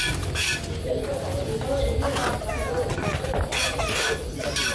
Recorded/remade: recorded